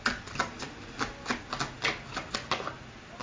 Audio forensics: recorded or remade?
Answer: recorded